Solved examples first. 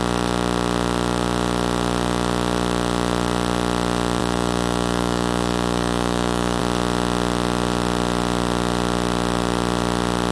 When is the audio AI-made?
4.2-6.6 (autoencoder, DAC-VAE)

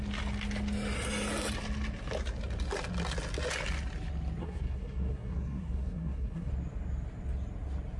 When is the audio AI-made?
4.4-6.5 (codec, SNAC)

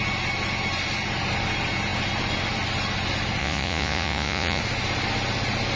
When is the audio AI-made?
3.4-4.6 (vocoder, Vocos)

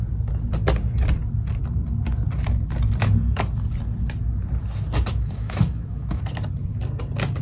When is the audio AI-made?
5.1-6.2 (autoencoder, DAC-VAE)

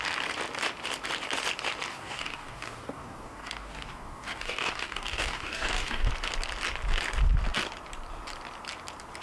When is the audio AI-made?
1.9-6.1 (codec, DAC)